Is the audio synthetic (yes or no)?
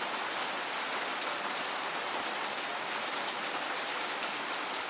no